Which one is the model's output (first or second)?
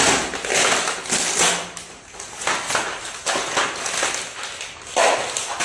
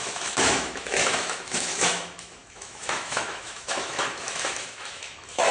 second